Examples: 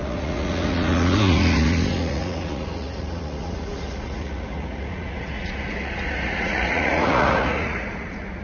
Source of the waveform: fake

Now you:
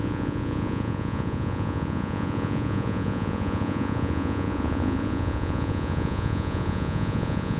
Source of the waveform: fake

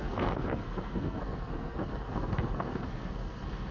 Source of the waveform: fake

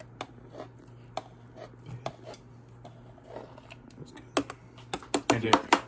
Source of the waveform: real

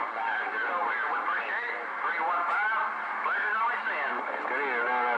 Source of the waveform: real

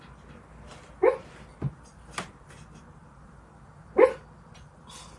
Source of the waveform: real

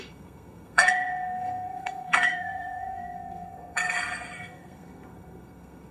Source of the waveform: fake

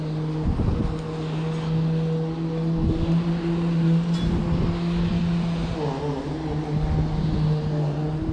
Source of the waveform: real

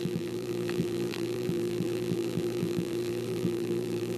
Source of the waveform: fake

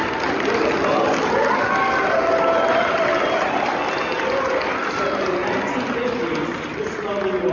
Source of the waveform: real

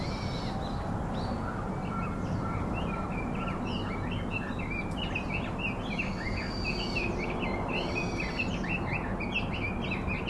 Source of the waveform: real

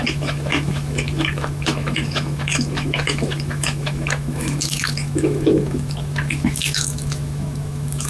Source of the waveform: fake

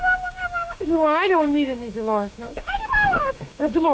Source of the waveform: fake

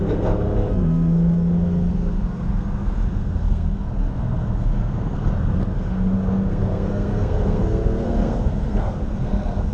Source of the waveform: fake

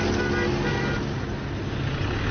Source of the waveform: real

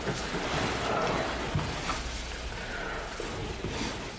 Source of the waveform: real